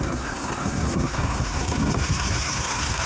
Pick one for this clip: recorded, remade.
remade